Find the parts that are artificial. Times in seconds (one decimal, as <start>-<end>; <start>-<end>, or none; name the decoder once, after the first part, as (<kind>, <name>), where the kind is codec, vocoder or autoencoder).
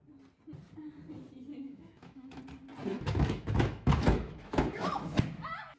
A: 1.5-2.4 (autoencoder, DAC-VAE); 2.9-5.2